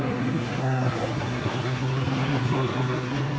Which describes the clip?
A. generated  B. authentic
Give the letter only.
A